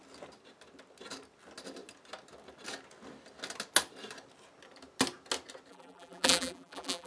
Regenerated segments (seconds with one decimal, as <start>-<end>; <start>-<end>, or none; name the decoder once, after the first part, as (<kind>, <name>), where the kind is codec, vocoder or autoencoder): 5.7-7.1 (vocoder, BigVGAN v2)